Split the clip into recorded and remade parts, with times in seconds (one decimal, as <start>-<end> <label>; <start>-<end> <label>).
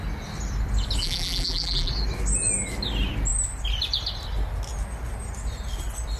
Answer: 0.0-1.0 recorded; 1.0-1.9 remade; 1.9-6.2 recorded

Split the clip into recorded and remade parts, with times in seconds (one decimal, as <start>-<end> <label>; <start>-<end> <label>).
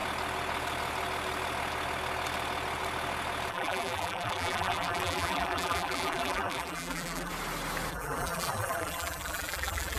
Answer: 0.0-3.5 recorded; 3.5-7.3 remade; 7.3-7.9 recorded; 7.9-10.0 remade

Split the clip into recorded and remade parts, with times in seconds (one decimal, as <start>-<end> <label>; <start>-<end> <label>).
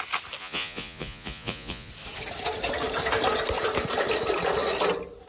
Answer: 0.0-0.4 recorded; 0.4-1.9 remade; 1.9-5.3 recorded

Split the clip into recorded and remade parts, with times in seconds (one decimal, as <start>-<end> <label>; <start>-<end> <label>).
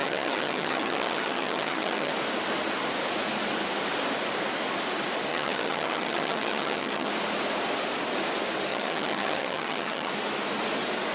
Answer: 0.0-2.1 remade; 2.1-5.3 recorded; 5.3-7.1 remade; 7.1-8.7 recorded; 8.7-10.1 remade; 10.1-11.1 recorded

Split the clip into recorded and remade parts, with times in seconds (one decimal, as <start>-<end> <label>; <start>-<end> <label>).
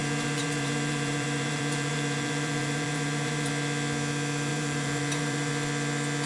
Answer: 0.0-3.5 remade; 3.5-4.5 recorded; 4.5-5.5 remade; 5.5-6.3 recorded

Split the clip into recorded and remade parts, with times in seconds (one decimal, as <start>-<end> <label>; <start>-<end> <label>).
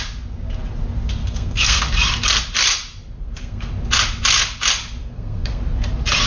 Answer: 0.0-1.2 recorded; 1.2-1.8 remade; 1.8-3.2 recorded; 3.2-3.7 remade; 3.7-5.0 recorded; 5.0-5.6 remade; 5.6-6.3 recorded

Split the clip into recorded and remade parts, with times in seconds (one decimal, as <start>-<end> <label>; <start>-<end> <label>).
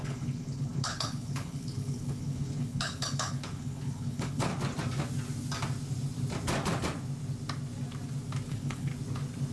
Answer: 0.0-4.5 remade; 4.5-8.5 recorded; 8.5-8.9 remade; 8.9-9.5 recorded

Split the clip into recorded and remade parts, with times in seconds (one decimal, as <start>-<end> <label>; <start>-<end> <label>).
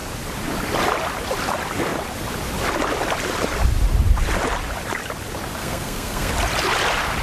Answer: 0.0-5.6 recorded; 5.6-6.3 remade; 6.3-7.2 recorded